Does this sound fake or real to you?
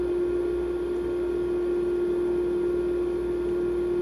real